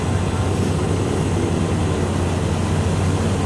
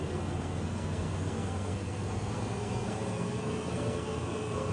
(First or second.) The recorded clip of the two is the first